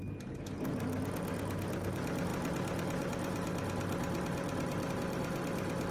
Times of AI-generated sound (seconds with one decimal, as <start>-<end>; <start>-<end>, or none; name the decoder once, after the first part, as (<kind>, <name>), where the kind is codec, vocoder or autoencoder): none